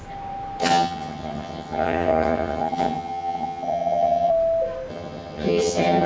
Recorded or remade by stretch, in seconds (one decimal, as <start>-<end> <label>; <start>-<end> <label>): 0.0-0.6 recorded; 0.6-4.3 remade; 4.3-4.9 recorded; 4.9-6.1 remade